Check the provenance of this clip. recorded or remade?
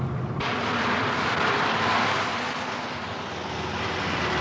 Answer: remade